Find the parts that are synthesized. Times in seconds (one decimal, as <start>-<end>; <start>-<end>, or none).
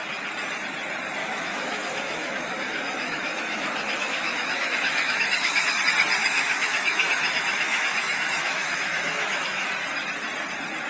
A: 1.2-5.8; 6.2-9.7